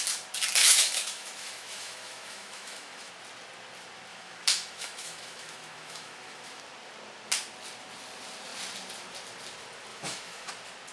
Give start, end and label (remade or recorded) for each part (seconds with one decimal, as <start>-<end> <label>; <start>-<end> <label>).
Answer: 0.0-0.6 recorded; 0.6-3.1 remade; 3.1-4.1 recorded; 4.1-6.6 remade; 6.6-9.9 recorded; 9.9-10.5 remade; 10.5-10.9 recorded